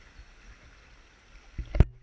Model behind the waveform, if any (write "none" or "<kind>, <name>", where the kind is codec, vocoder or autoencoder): none